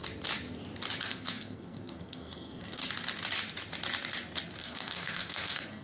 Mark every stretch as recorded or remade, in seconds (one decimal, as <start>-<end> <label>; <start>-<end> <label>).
0.0-1.0 recorded; 1.0-2.8 remade; 2.8-4.6 recorded; 4.6-5.8 remade